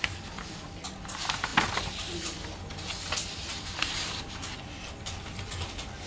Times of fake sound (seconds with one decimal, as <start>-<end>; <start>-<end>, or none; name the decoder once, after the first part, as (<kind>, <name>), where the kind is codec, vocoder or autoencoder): none